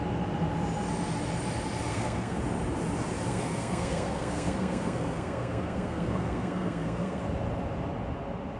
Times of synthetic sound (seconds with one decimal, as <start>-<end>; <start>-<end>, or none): 1.9-2.4; 3.3-7.2